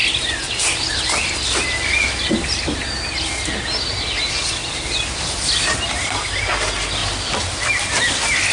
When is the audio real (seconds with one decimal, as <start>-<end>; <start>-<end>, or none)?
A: 0.0-4.6; 5.2-7.0